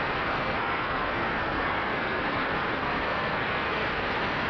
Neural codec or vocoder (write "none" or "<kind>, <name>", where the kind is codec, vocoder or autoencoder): codec, SNAC